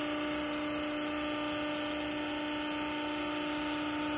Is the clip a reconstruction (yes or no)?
no